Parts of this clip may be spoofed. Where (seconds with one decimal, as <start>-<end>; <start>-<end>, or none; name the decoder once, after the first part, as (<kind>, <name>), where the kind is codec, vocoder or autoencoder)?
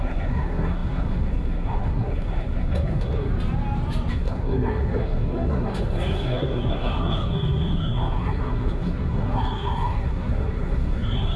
0.0-3.3 (codec, SNAC); 4.1-11.4